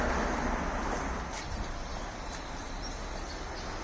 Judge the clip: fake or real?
real